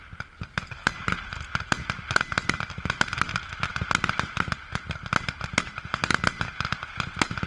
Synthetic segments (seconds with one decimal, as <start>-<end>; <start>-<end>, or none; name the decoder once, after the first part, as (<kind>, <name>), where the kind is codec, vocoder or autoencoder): none